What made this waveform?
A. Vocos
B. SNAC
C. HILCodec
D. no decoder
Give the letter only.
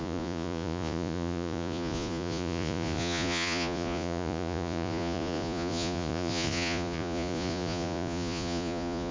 A